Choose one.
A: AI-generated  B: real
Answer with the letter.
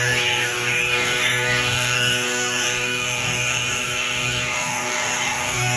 A